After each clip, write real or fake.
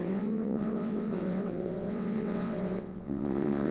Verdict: fake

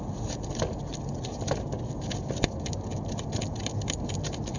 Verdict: real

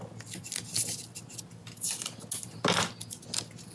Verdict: real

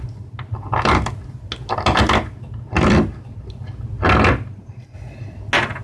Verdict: real